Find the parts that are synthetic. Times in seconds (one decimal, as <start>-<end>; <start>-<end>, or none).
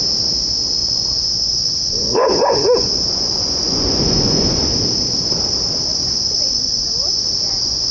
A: 0.8-4.6; 5.9-7.9